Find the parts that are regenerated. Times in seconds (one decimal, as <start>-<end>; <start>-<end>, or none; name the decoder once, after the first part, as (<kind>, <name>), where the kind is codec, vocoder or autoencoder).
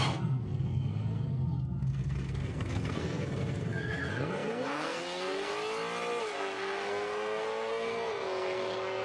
0.0-5.5 (codec, SNAC); 6.2-9.0